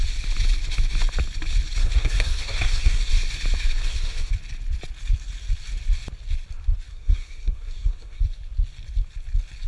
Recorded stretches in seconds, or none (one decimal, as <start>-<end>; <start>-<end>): 0.0-1.8; 3.1-3.8; 4.3-6.9; 8.2-9.7